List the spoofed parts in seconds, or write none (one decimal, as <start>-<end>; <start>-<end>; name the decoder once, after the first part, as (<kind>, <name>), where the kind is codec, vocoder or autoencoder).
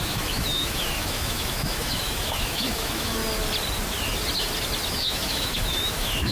0.0-3.2 (autoencoder, DAC-VAE); 4.9-6.3